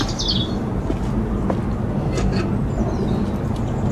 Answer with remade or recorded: recorded